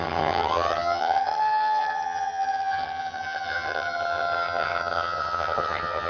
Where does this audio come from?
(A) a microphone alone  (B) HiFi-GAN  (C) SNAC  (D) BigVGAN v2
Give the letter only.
B